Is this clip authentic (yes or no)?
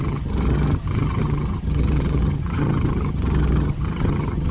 no